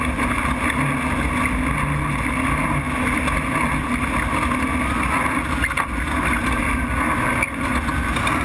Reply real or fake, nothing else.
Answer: real